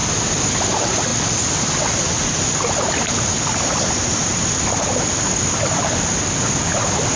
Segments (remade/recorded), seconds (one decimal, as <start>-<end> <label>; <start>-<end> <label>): 0.0-7.2 recorded